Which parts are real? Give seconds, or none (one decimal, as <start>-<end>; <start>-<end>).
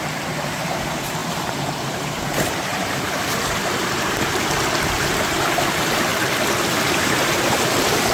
6.1-7.0